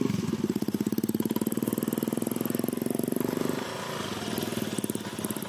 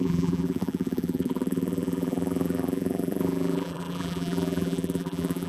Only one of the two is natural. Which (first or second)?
first